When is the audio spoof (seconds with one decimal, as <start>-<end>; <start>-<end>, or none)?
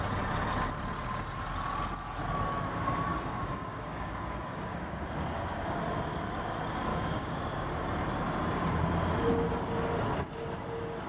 3.1-5.8; 6.9-7.4